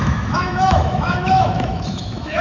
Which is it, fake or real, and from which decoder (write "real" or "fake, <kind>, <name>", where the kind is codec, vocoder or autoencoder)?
fake, autoencoder, DAC-VAE